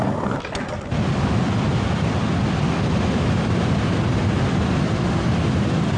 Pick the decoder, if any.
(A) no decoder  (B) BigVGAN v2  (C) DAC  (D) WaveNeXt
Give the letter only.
A